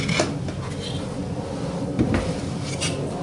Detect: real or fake real